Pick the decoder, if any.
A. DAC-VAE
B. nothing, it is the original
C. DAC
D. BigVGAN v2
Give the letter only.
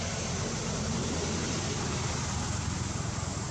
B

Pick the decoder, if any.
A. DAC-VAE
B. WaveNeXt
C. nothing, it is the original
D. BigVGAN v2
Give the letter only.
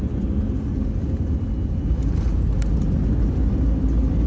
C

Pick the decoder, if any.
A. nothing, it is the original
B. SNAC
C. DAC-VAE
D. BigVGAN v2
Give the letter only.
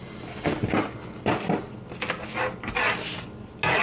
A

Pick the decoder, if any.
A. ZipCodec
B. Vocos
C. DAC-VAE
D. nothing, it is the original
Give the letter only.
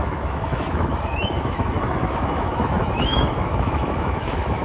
C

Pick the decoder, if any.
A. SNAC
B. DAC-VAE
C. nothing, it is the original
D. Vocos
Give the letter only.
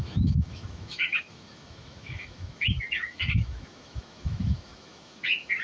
B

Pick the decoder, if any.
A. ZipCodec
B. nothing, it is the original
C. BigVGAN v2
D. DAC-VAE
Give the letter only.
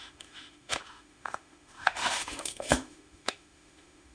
D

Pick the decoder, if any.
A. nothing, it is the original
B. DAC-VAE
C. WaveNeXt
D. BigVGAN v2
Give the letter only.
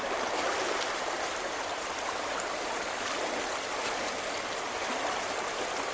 A